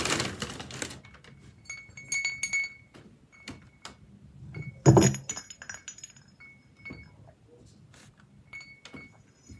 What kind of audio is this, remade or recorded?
recorded